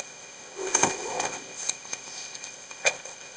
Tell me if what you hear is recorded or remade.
remade